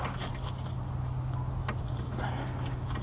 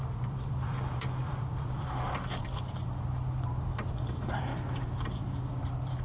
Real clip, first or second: first